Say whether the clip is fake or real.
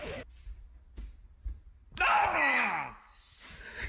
real